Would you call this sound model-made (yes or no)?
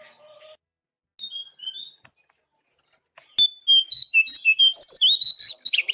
no